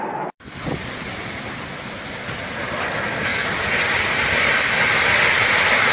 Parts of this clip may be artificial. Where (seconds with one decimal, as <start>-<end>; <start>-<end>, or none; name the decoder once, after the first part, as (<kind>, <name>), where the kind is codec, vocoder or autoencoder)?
none